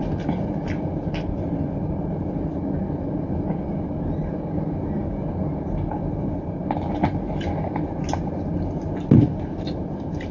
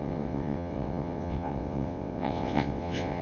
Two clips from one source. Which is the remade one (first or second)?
second